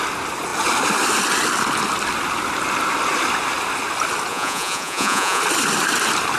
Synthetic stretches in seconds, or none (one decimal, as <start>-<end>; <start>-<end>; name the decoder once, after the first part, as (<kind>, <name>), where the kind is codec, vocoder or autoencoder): 4.3-5.4 (vocoder, Vocos)